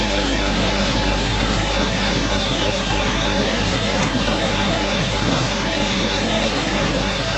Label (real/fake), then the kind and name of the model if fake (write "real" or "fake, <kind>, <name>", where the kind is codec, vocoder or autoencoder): fake, codec, SNAC